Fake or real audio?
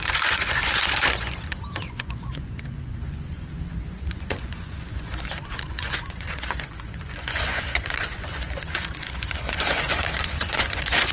fake